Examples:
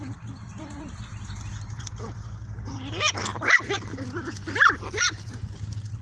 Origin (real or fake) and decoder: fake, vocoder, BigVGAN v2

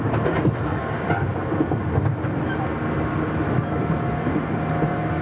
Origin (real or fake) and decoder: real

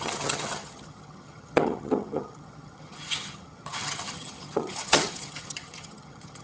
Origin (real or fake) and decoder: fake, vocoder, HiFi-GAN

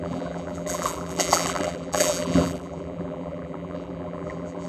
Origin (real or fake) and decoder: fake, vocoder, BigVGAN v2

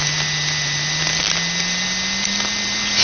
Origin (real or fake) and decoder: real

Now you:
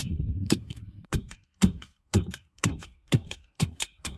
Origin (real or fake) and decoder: fake, codec, SNAC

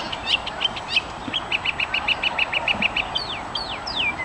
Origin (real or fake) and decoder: real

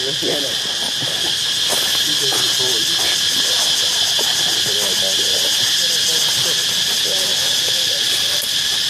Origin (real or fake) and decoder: real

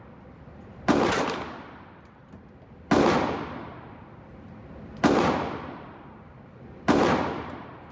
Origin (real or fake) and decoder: real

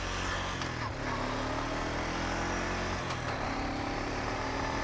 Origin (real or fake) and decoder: real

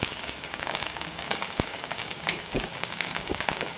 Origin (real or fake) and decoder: fake, codec, DAC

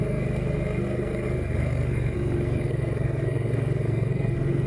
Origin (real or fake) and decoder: fake, codec, SNAC